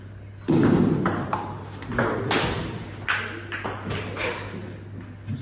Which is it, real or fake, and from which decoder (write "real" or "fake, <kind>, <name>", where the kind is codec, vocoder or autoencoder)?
real